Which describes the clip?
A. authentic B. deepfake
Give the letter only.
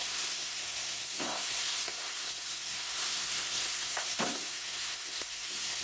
B